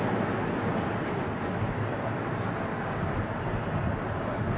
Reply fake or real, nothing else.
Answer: real